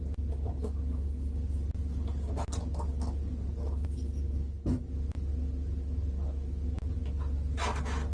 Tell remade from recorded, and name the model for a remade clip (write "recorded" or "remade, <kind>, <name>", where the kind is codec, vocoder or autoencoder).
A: recorded